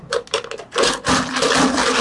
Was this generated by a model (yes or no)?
yes